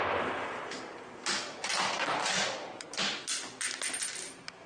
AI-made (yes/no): no